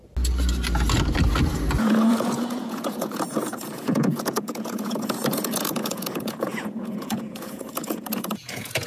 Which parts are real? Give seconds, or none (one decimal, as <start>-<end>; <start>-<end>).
0.0-1.8